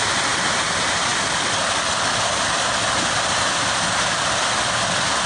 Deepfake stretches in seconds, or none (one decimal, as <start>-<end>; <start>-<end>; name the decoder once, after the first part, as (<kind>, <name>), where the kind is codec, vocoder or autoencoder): none